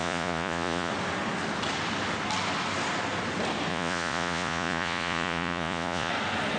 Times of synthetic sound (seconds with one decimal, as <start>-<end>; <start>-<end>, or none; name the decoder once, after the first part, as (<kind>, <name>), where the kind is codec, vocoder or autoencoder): 0.0-0.9 (vocoder, Vocos); 3.7-6.1